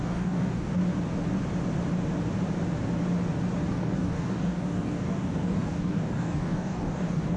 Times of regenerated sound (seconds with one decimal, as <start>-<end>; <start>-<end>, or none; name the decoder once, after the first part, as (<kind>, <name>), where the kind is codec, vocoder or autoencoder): 0.0-0.8 (codec, DAC); 3.7-7.4